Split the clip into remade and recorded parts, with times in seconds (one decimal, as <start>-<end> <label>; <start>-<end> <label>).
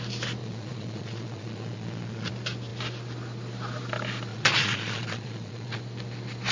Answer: 0.0-0.4 recorded; 0.4-2.3 remade; 2.3-4.3 recorded; 4.3-5.8 remade; 5.8-6.5 recorded